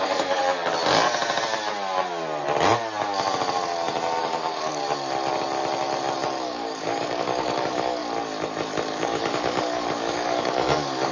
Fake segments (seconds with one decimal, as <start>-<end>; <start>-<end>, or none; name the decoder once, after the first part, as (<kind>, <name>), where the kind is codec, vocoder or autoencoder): 0.0-0.4 (codec, DAC); 4.2-4.8; 6.4-8.0; 9.0-11.1